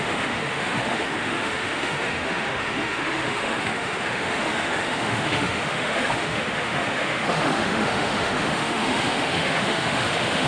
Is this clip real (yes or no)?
no